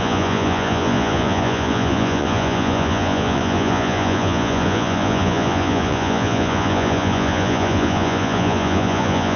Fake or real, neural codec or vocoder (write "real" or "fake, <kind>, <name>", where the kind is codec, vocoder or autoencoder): fake, vocoder, Vocos